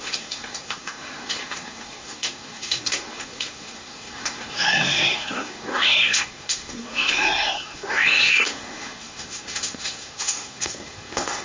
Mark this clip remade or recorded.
remade